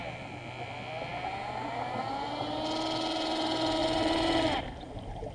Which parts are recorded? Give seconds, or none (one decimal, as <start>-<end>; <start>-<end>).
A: 0.0-3.8; 4.7-5.3